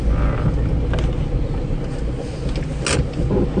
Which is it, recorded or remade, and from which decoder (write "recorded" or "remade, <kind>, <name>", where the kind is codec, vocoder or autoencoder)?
recorded